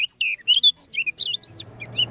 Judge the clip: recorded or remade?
recorded